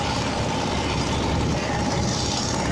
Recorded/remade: recorded